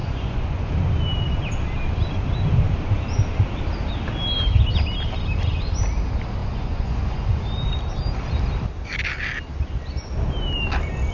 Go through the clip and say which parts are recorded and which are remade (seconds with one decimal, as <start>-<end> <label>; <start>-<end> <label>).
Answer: 0.0-0.7 remade; 0.7-6.4 recorded; 6.4-7.4 remade; 7.4-11.1 recorded